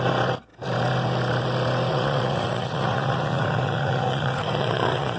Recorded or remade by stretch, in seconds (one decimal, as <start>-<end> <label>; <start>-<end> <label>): 0.0-1.9 recorded; 1.9-5.2 remade